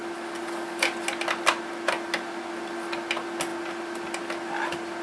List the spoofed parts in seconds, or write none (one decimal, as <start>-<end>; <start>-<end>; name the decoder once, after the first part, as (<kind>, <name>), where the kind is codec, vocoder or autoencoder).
none